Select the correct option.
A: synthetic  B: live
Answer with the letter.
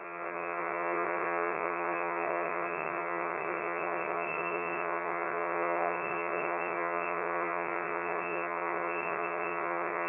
A